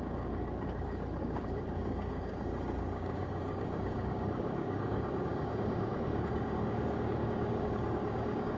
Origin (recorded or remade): remade